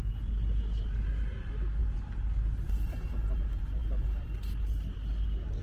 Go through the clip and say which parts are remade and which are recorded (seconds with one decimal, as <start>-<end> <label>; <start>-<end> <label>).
0.0-5.6 recorded

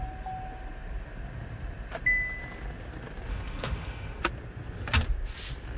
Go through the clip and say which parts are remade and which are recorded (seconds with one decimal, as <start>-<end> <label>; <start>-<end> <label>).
0.0-3.3 recorded; 3.3-4.2 remade; 4.2-5.8 recorded